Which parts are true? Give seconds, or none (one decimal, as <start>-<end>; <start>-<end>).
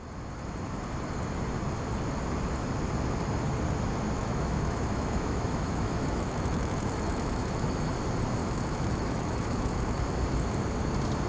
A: 0.0-4.2; 7.9-8.4; 10.0-11.3